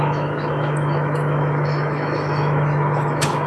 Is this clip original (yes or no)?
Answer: no